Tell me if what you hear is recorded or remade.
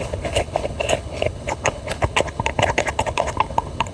remade